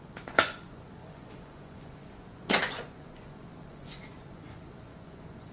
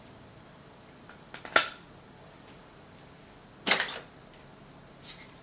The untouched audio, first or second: second